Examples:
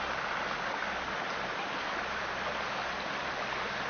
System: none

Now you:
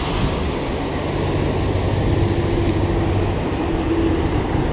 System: none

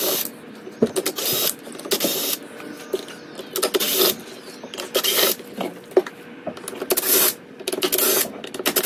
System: none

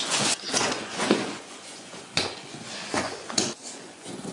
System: vocoder, Vocos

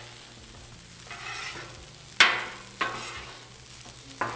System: none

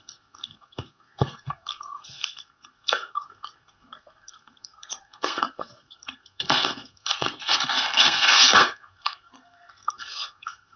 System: codec, SNAC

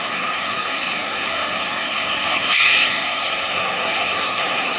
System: codec, SNAC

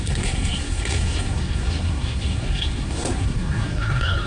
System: codec, SNAC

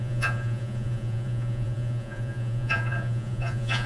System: vocoder, Vocos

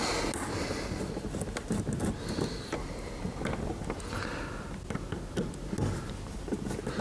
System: none